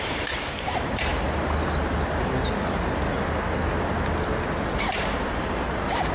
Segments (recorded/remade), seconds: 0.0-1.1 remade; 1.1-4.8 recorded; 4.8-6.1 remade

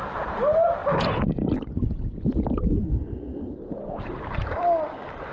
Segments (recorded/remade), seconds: 0.0-5.3 recorded

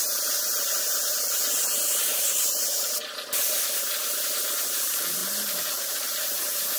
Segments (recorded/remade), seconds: 0.0-3.0 remade; 3.0-4.6 recorded; 4.6-5.2 remade; 5.2-5.7 recorded; 5.7-6.8 remade

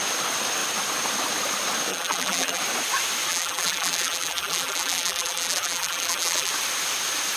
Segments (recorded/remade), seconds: 0.0-1.9 recorded; 1.9-2.6 remade; 2.6-3.3 recorded; 3.3-6.5 remade; 6.5-7.4 recorded

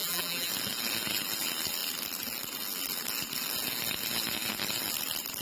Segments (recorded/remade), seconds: 0.0-0.5 remade; 0.5-5.4 recorded

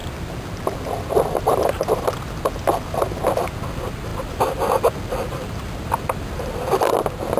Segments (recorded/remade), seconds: 0.0-7.4 recorded

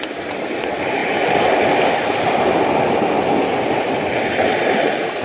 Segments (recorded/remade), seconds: 0.0-1.0 remade; 1.0-4.1 recorded; 4.1-5.2 remade